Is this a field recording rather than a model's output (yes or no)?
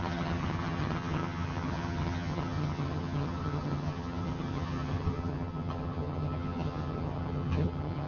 no